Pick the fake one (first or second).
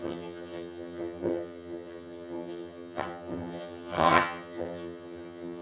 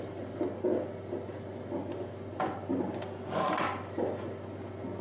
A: first